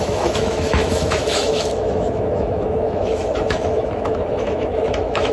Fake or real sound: fake